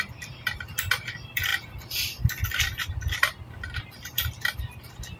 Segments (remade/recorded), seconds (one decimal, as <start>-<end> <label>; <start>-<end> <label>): 0.0-5.2 remade